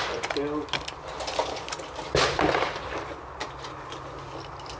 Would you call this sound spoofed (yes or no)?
no